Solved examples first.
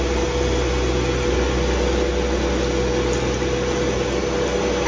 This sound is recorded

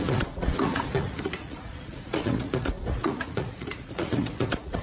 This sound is remade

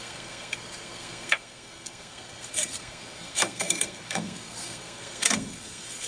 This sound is remade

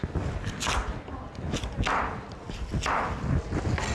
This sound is recorded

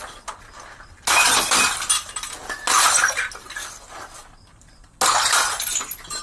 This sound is recorded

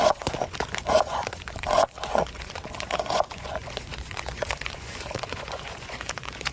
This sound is remade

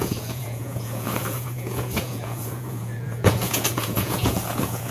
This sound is remade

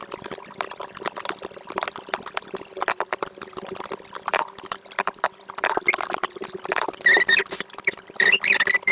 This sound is remade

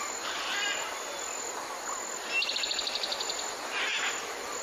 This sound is recorded